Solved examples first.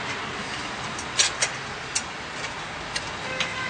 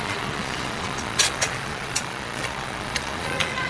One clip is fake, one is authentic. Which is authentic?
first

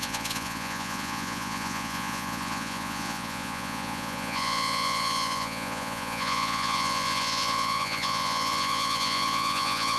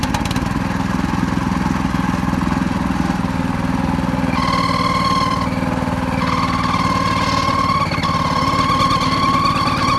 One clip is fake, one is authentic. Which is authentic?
second